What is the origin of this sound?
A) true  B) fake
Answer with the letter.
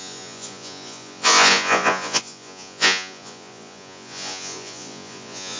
B